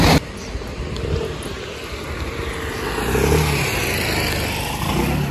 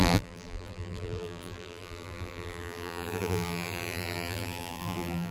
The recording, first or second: first